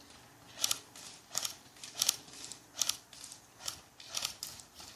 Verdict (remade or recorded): remade